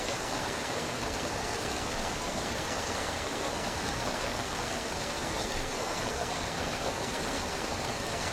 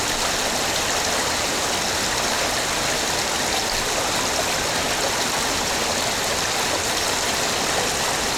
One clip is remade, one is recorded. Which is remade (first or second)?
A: first